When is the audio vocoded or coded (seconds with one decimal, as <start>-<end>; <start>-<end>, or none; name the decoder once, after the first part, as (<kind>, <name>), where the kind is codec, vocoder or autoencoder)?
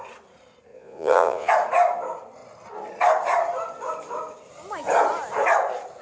0.7-1.5 (vocoder, Vocos)